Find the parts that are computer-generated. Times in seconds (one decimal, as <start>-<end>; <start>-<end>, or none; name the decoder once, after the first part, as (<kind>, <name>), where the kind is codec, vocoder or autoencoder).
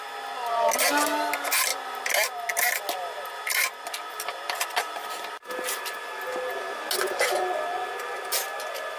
none